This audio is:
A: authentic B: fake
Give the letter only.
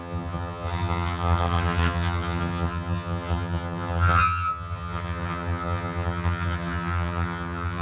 B